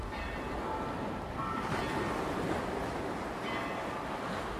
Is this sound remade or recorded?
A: recorded